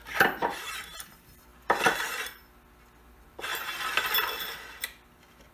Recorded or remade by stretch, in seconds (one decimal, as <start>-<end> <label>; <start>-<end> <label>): 0.0-1.5 remade; 1.5-3.1 recorded; 3.1-3.5 remade; 3.5-5.5 recorded